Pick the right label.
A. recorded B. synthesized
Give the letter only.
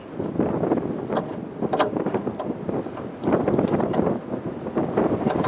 A